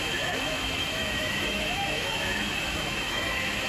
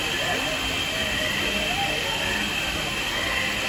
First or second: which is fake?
first